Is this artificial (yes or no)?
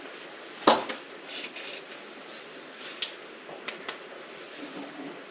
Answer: no